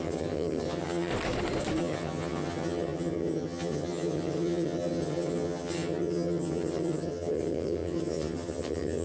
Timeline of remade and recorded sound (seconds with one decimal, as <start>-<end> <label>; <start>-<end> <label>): 0.0-1.1 remade; 1.1-1.8 recorded; 1.8-9.0 remade